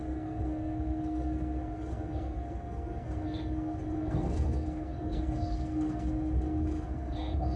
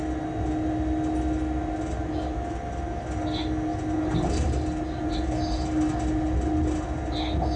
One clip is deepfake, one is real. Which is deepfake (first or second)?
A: first